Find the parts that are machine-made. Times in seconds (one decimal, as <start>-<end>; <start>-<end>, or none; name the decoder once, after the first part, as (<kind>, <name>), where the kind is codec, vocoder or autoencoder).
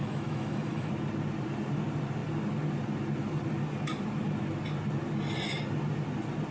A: 0.0-0.9 (autoencoder, DAC-VAE)